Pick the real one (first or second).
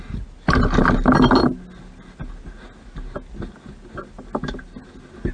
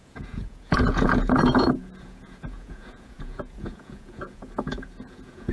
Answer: first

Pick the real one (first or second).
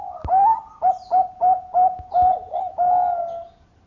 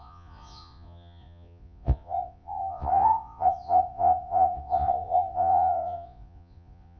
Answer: first